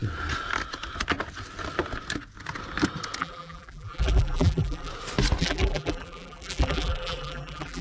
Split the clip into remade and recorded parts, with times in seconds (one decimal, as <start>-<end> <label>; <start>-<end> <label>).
0.0-3.2 recorded; 3.2-4.9 remade; 4.9-5.4 recorded; 5.4-7.8 remade